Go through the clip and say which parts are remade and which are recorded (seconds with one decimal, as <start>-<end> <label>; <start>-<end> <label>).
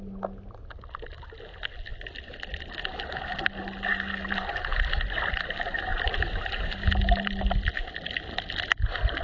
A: 0.0-5.9 recorded; 5.9-6.9 remade; 6.9-9.2 recorded